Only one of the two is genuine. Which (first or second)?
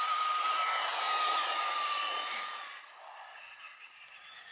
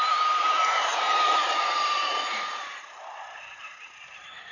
first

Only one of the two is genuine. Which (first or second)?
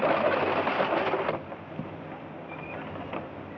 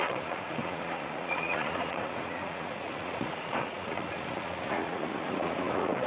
first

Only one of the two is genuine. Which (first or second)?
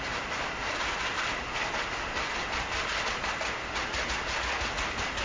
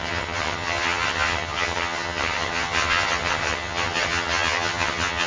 first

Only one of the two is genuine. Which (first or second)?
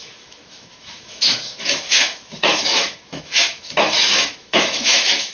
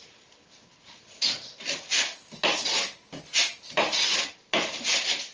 second